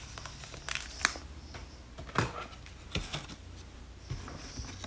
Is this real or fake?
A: real